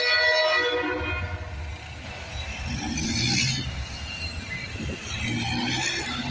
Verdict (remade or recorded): recorded